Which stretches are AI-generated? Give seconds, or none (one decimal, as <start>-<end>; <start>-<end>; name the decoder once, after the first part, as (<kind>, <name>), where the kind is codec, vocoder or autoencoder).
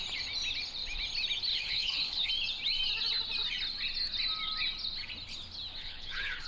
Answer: 1.5-2.3 (codec, HILCodec); 5.8-6.5